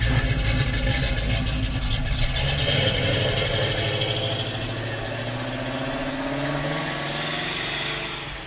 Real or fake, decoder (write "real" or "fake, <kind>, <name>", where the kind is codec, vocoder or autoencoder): real